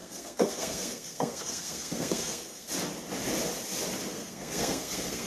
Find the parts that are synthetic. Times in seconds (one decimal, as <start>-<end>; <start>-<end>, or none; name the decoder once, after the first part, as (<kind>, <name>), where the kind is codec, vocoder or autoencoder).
0.0-2.7 (codec, SNAC); 4.1-5.3